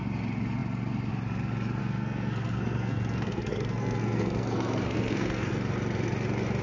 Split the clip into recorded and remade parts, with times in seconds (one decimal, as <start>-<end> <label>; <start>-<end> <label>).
0.0-1.8 recorded; 1.8-5.5 remade; 5.5-6.6 recorded